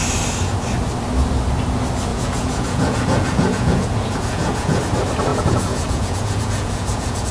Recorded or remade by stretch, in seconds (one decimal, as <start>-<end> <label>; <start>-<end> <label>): 0.0-2.1 recorded; 2.1-4.8 remade; 4.8-5.3 recorded; 5.3-7.3 remade